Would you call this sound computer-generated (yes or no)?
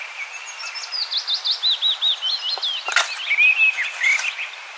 no